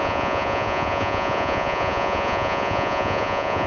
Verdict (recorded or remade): remade